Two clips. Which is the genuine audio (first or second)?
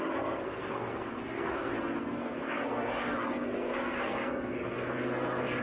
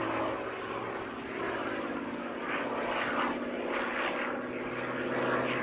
second